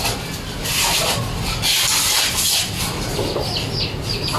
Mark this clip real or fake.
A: real